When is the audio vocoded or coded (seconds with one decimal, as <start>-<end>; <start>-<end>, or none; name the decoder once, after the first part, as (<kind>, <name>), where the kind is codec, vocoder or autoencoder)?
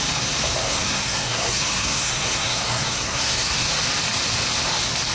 0.6-3.7 (codec, SNAC)